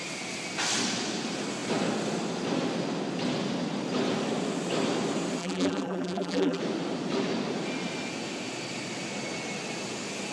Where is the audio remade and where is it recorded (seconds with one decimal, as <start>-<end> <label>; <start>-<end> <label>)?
0.0-5.4 recorded; 5.4-6.6 remade; 6.6-10.3 recorded